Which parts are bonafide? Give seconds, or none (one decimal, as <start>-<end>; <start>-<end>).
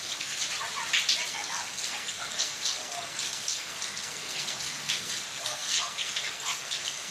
0.4-1.3